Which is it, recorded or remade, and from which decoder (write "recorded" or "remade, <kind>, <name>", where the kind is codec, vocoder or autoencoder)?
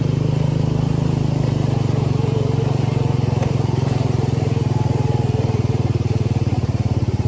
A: remade, vocoder, BigVGAN v2